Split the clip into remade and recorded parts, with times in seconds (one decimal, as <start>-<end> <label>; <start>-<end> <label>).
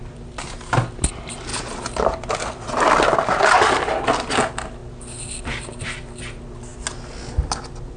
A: 0.0-1.5 recorded; 1.5-2.8 remade; 2.8-8.0 recorded